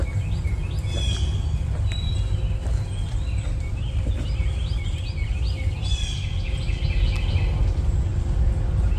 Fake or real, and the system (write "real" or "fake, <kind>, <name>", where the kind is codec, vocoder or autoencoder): real